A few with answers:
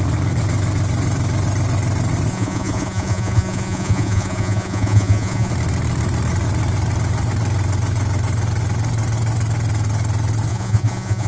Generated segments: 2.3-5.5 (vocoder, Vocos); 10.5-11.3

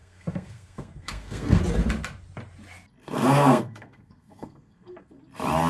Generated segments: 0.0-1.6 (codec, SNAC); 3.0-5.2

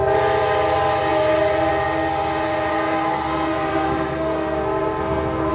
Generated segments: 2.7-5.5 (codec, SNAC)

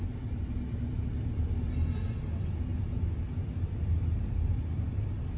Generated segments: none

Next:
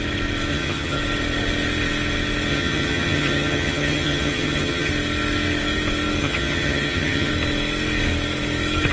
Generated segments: 0.5-1.0 (vocoder, HiFi-GAN); 2.5-4.9; 6.2-7.3

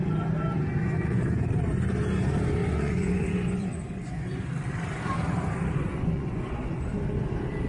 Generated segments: 0.8-1.5 (vocoder, Vocos); 2.6-4.5; 5.9-6.9